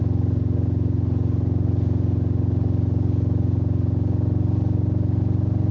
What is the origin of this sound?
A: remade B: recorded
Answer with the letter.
B